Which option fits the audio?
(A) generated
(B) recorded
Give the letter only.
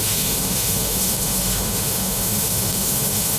A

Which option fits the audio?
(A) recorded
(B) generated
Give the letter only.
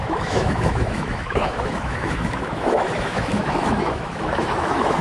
B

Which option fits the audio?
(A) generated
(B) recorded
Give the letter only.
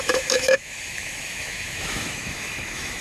A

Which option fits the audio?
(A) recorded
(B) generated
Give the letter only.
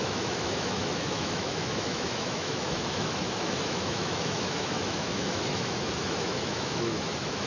B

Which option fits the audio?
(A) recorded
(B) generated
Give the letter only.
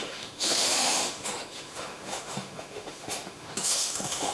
B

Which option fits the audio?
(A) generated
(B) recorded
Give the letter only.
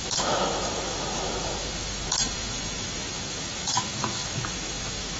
A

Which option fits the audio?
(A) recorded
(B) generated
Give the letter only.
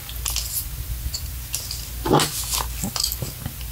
A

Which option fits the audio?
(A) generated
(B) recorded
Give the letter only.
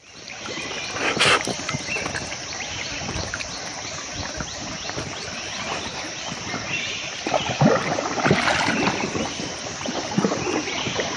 B